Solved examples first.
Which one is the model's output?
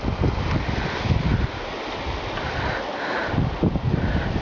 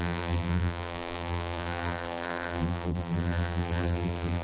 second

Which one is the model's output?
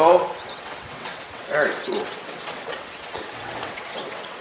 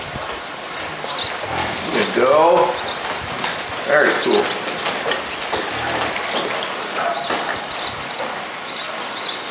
first